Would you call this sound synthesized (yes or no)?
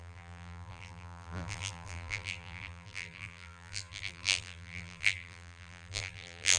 yes